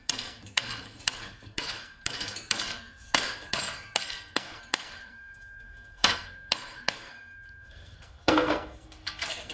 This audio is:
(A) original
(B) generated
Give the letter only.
B